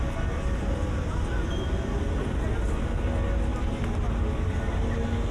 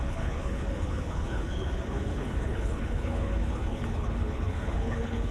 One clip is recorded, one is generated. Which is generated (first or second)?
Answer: second